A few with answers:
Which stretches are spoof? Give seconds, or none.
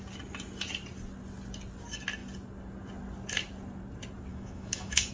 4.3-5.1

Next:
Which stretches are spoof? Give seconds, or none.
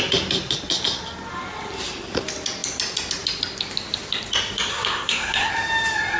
4.7-5.5